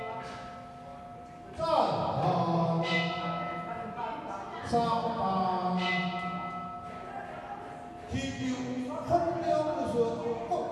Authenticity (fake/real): real